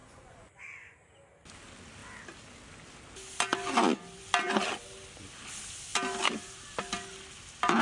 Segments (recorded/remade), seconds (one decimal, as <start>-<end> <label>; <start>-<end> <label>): 0.0-1.0 remade; 1.0-7.8 recorded